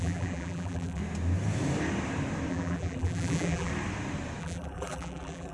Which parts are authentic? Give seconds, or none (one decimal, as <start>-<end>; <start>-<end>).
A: 1.0-2.5; 3.7-4.4